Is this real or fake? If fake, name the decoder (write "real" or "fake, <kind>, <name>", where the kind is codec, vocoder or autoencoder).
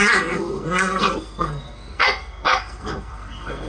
fake, codec, SNAC